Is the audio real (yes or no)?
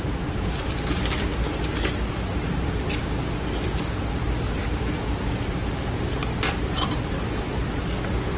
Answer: yes